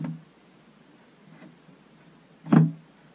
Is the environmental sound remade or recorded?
recorded